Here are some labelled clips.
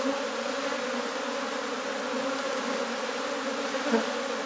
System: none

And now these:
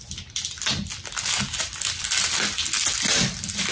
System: none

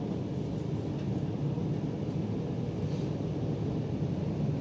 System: none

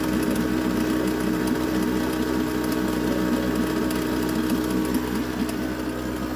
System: none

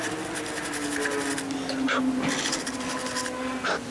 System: none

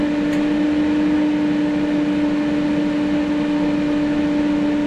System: none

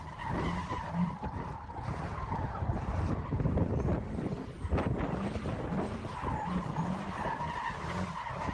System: none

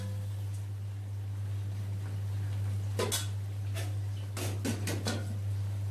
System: none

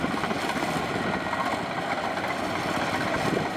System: none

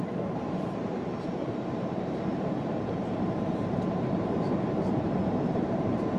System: vocoder, BigVGAN v2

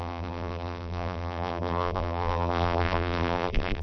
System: vocoder, BigVGAN v2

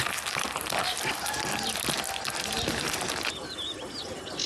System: none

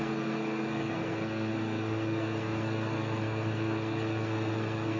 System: codec, SNAC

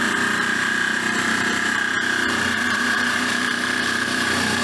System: vocoder, BigVGAN v2